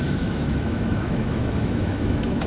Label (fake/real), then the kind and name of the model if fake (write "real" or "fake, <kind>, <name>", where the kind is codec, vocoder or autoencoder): fake, autoencoder, DAC-VAE